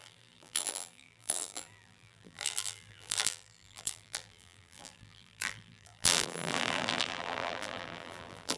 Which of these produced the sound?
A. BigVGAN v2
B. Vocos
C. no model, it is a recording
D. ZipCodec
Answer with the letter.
A